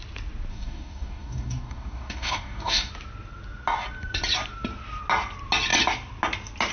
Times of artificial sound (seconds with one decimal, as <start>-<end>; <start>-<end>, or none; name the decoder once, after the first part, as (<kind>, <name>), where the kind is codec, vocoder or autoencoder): 0.5-2.9 (codec, DAC)